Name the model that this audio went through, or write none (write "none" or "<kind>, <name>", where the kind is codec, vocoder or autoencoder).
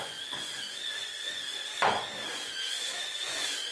vocoder, Vocos